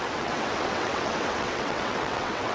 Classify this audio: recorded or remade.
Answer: remade